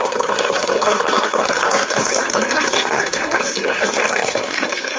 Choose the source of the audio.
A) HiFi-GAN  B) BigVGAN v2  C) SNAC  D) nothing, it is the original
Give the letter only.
C